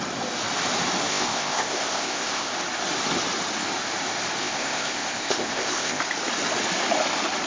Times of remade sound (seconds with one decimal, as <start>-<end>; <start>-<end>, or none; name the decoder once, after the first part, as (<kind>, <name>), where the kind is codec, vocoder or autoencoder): 1.1-2.5 (codec, ZipCodec); 4.4-6.0